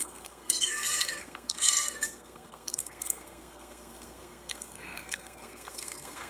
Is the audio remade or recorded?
remade